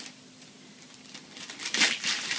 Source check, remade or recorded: recorded